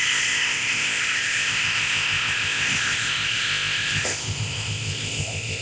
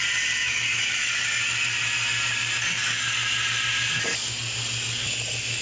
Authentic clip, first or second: second